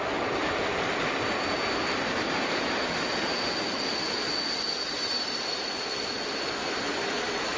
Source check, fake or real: real